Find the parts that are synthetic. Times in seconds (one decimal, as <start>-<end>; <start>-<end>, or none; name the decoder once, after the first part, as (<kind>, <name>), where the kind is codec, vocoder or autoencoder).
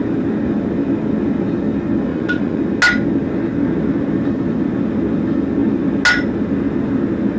2.1-2.6 (vocoder, Vocos)